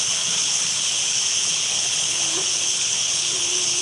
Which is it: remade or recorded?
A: remade